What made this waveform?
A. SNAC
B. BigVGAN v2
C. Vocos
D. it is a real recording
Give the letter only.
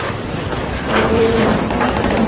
B